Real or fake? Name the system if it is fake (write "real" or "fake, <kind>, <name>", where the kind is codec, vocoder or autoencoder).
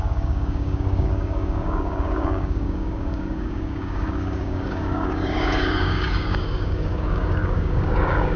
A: fake, codec, DAC